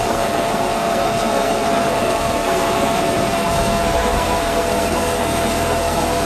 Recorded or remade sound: remade